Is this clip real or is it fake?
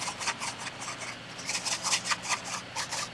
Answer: real